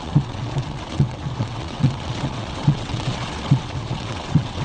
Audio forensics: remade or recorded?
remade